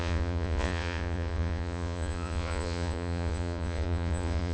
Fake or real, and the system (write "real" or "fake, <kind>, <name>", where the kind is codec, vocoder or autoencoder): fake, vocoder, Vocos